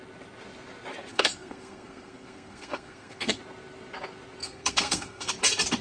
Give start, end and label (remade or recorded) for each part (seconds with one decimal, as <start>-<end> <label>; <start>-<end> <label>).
0.0-1.1 recorded; 1.1-3.4 remade; 3.4-4.4 recorded; 4.4-5.3 remade; 5.3-5.8 recorded

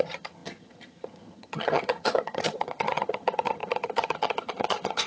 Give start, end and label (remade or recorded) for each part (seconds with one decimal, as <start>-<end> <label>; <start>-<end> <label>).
0.0-5.1 remade